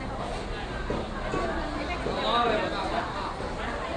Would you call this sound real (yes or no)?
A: yes